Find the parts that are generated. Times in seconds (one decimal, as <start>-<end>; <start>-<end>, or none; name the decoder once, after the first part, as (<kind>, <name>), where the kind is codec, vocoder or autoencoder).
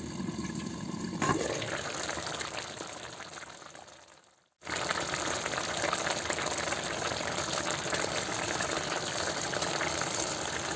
none